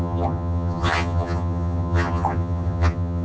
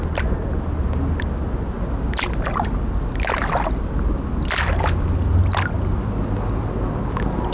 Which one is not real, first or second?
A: first